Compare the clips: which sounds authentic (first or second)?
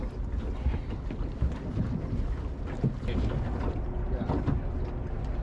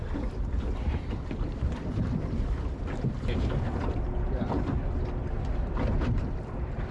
first